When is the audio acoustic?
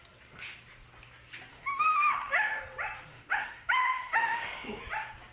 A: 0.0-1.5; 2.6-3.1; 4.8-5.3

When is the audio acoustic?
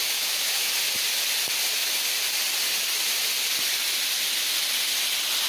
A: 0.7-5.5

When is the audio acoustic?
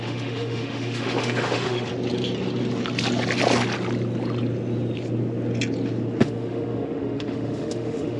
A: 1.9-6.2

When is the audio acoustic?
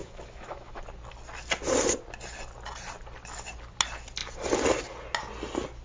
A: 0.8-5.8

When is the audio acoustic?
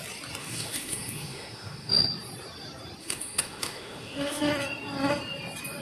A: 0.0-0.4; 1.9-3.0; 4.4-5.8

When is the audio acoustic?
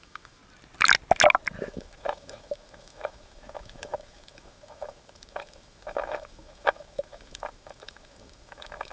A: 0.4-1.6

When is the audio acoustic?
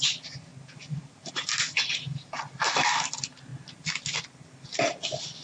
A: 0.0-5.4